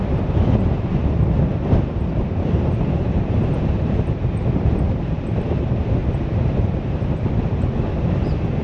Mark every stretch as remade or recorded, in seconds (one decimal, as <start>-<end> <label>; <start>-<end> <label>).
0.0-2.0 recorded; 2.0-4.8 remade; 4.8-6.0 recorded; 6.0-7.3 remade; 7.3-8.6 recorded